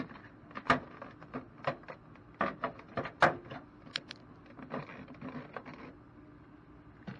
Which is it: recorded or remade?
recorded